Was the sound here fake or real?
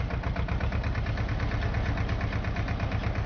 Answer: real